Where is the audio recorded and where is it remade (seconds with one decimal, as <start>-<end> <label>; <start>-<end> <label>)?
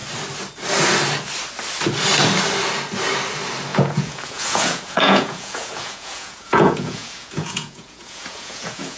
0.0-3.7 recorded; 3.7-9.0 remade